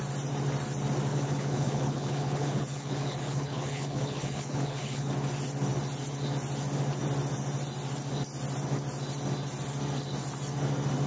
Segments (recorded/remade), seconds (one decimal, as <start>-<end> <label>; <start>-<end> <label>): 0.0-1.1 recorded; 1.1-5.1 remade; 5.1-11.1 recorded